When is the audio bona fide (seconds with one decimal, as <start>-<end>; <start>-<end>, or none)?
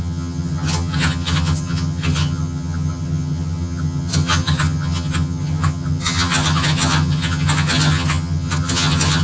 none